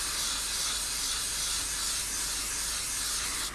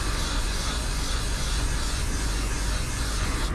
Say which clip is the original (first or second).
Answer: first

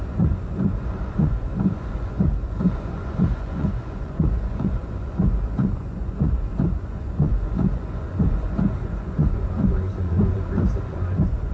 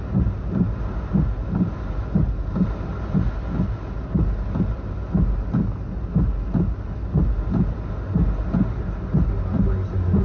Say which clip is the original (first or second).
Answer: second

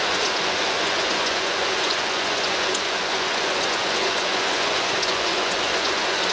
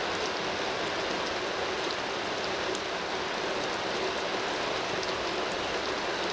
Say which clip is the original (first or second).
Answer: second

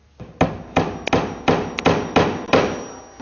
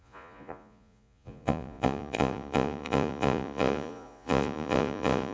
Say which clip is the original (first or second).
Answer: first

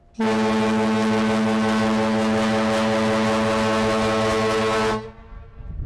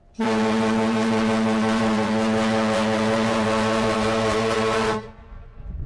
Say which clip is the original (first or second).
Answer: first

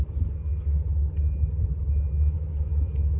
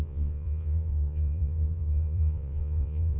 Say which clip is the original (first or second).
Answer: first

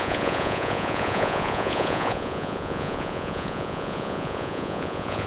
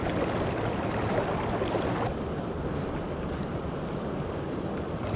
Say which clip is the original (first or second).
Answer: second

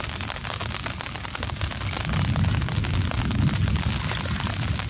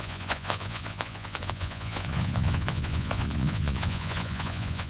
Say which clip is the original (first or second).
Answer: first